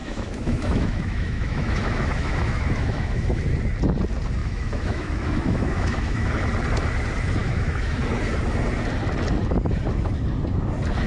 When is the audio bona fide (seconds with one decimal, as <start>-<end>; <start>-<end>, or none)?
3.4-4.4; 6.3-7.4; 8.0-11.1